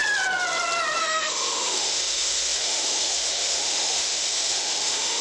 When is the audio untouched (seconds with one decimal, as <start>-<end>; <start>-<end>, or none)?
0.0-1.0